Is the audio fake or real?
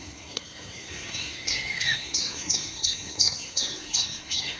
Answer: fake